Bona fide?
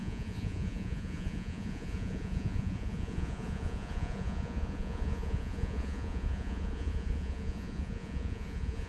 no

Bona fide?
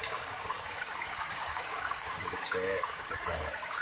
no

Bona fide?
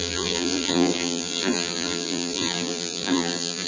no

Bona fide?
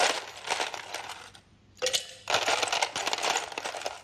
no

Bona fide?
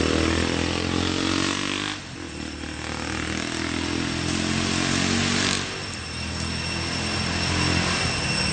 yes